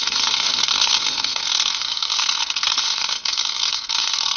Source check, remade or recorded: remade